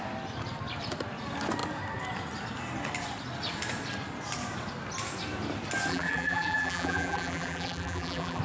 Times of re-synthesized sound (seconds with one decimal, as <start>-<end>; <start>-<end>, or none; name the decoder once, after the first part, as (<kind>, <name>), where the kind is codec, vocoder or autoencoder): 5.9-8.4 (vocoder, BigVGAN v2)